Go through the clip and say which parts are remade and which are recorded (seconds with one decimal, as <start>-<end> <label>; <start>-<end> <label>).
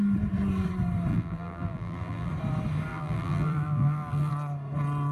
0.0-1.1 recorded; 1.1-2.3 remade; 2.3-2.9 recorded; 2.9-4.3 remade; 4.3-5.1 recorded